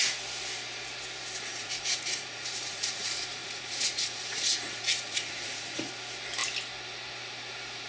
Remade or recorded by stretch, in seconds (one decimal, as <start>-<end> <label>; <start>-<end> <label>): 0.0-1.5 recorded; 1.5-5.9 remade; 5.9-7.9 recorded